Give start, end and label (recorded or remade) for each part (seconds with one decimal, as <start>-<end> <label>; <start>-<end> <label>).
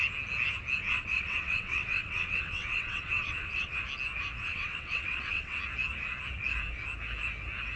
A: 0.0-0.8 recorded; 0.8-3.8 remade; 3.8-4.4 recorded; 4.4-5.6 remade; 5.6-7.8 recorded